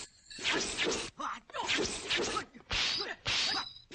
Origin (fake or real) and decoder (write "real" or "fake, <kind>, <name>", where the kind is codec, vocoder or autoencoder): fake, vocoder, Vocos